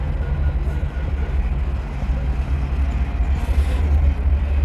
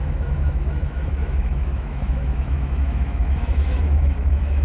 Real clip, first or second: first